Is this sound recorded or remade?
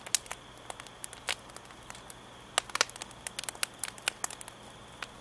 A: recorded